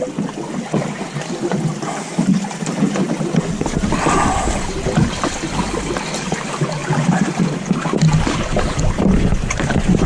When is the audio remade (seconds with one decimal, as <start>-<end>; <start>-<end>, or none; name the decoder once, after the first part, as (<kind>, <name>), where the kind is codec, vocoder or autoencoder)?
none